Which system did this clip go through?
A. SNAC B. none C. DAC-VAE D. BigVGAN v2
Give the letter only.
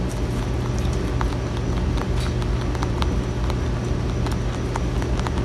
B